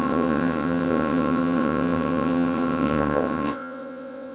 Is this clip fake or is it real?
fake